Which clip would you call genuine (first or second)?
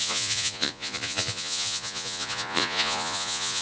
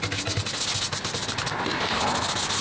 second